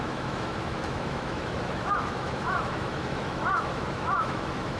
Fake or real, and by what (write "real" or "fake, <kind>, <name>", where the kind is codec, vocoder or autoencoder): fake, autoencoder, DAC-VAE